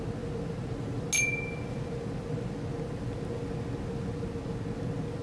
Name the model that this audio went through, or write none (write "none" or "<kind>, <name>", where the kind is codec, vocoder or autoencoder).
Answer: none